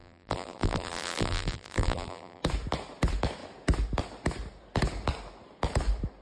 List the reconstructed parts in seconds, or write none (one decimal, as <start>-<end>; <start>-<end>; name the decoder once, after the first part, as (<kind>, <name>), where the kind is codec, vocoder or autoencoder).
0.0-2.4 (vocoder, BigVGAN v2)